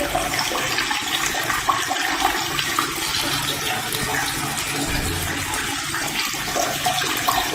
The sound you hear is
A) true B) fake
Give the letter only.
A